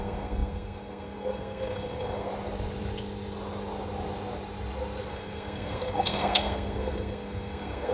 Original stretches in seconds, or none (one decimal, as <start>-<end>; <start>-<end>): 2.3-5.1